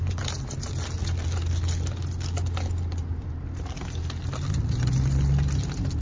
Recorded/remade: recorded